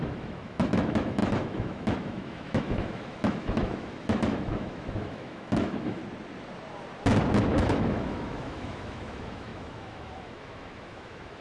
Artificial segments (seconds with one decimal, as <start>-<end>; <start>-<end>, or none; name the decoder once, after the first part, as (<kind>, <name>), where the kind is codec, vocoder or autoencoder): 0.0-6.0 (autoencoder, DAC-VAE); 7.6-11.4